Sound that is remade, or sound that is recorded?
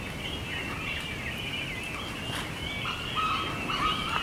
recorded